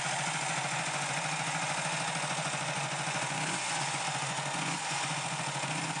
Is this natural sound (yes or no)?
no